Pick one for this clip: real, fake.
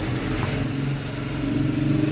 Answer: real